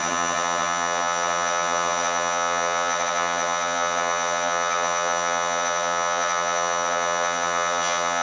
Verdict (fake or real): fake